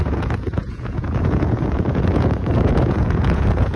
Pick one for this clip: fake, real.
fake